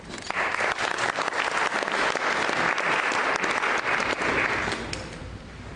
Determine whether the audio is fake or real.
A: real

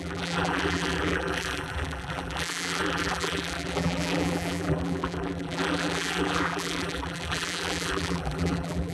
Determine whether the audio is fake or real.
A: fake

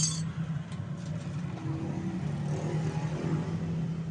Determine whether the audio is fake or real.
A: real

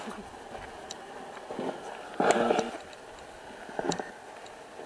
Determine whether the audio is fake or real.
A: real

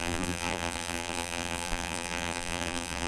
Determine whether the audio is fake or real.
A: fake